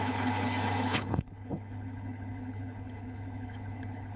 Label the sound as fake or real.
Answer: fake